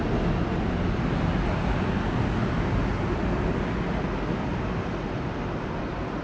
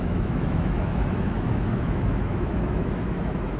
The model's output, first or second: second